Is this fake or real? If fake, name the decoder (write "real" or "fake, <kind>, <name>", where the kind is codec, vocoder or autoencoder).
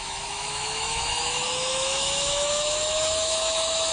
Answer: fake, autoencoder, DAC-VAE